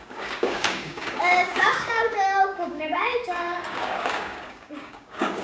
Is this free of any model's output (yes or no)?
no